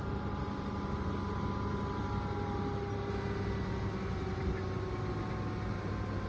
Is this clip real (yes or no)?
yes